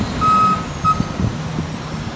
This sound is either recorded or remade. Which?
recorded